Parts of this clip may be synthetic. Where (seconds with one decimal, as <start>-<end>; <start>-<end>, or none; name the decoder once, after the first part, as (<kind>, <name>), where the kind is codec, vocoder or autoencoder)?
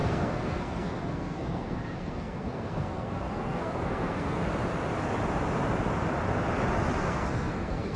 0.0-4.5 (codec, SNAC); 7.0-8.0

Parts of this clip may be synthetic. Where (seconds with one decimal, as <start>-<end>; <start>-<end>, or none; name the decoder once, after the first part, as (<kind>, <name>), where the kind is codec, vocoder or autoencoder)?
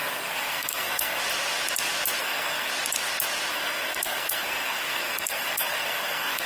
0.0-1.2 (codec, SNAC); 2.2-2.7; 3.5-6.5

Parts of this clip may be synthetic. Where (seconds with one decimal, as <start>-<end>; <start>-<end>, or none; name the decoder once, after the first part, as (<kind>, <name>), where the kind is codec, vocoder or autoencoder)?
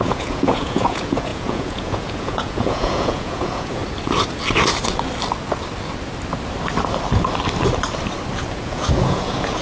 0.0-3.8 (vocoder, Vocos); 8.4-9.6